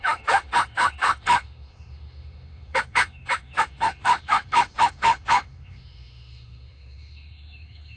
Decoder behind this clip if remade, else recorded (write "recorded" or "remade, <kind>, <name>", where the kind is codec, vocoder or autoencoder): remade, autoencoder, DAC-VAE